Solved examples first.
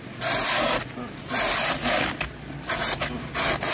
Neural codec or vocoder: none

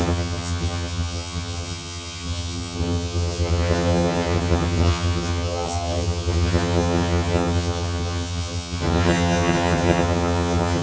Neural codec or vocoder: vocoder, HiFi-GAN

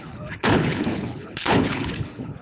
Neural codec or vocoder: codec, HILCodec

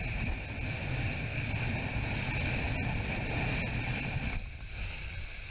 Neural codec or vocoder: none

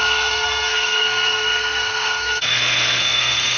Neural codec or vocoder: codec, SNAC